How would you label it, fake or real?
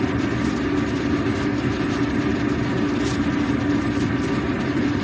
real